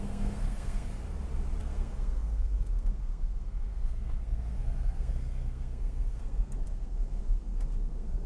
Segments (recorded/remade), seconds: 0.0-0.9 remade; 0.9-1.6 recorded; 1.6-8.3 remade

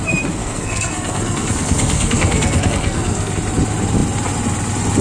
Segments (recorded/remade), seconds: 0.0-0.4 recorded; 0.4-3.3 remade; 3.3-5.0 recorded

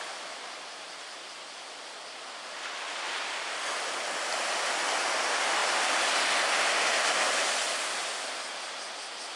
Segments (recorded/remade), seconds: 0.0-9.4 recorded

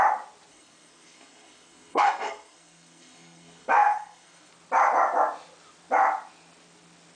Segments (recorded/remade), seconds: 0.0-0.5 recorded; 0.5-4.5 remade; 4.5-7.2 recorded